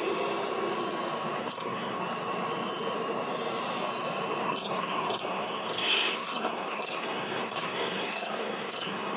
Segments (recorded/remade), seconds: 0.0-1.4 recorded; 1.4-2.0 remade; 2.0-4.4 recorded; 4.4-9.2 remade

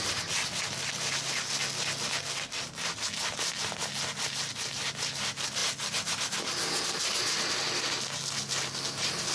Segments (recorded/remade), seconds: 0.0-9.3 recorded

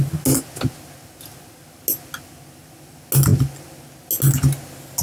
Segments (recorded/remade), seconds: 0.0-5.0 recorded

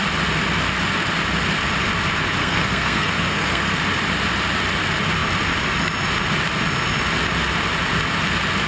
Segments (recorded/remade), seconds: 0.0-2.4 recorded; 2.4-3.8 remade; 3.8-8.7 recorded

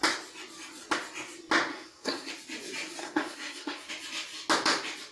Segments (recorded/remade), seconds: 0.0-1.7 recorded; 1.7-2.3 remade; 2.3-3.0 recorded; 3.0-3.9 remade; 3.9-5.1 recorded

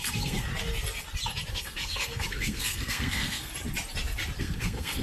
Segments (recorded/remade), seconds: 0.0-0.5 remade; 0.5-1.5 recorded; 1.5-3.5 remade; 3.5-4.4 recorded; 4.4-5.0 remade

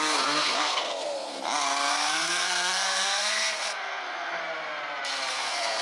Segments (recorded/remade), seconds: 0.0-1.4 remade; 1.4-1.9 recorded; 1.9-4.4 remade; 4.4-5.3 recorded; 5.3-5.8 remade